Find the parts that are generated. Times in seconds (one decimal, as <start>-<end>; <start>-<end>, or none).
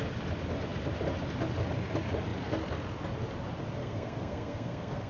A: 3.8-5.1